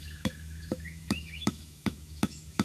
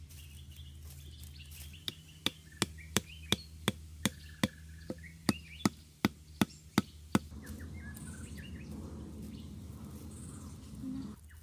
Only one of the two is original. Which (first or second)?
second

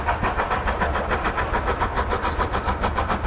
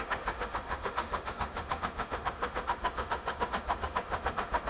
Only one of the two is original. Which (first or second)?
first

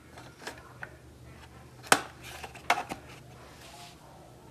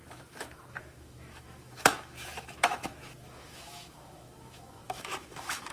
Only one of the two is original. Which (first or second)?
first